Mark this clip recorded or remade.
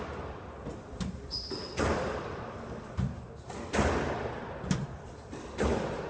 recorded